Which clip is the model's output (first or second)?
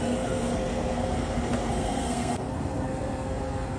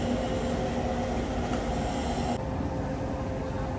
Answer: first